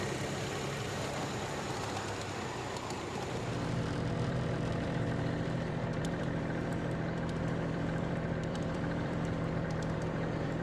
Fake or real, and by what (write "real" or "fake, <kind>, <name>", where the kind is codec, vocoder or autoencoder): fake, vocoder, BigVGAN v2